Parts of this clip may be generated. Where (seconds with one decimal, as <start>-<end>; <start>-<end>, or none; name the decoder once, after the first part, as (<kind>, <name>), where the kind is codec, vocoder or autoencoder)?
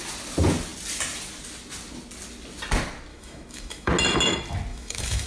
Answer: 3.1-3.9 (autoencoder, DAC-VAE); 4.7-5.3